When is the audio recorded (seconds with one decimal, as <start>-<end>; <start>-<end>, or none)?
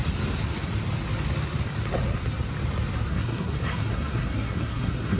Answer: 0.0-3.1